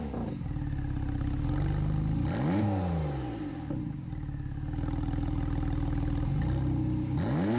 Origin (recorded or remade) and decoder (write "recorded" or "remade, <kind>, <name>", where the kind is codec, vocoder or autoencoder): recorded